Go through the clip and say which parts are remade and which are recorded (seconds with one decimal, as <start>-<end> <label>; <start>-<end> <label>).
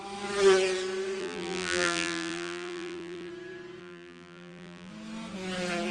0.0-1.2 recorded; 1.2-3.3 remade; 3.3-3.8 recorded; 3.8-4.9 remade; 4.9-5.9 recorded